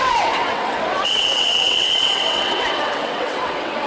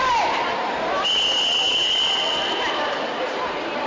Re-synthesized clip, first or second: first